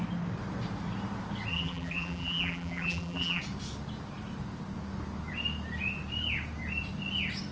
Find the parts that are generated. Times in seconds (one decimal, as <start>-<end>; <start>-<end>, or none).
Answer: 1.5-3.4